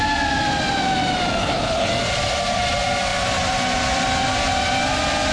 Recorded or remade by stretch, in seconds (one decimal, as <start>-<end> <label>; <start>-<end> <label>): 0.0-1.4 recorded; 1.4-1.9 remade; 1.9-5.3 recorded